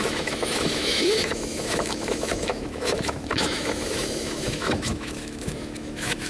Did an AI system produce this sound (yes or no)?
yes